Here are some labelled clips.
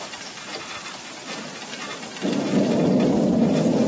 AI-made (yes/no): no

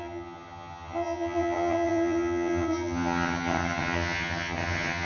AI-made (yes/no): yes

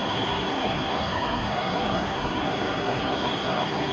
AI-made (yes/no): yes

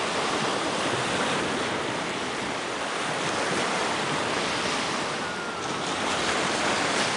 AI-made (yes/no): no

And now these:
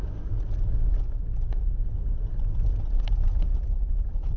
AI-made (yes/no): no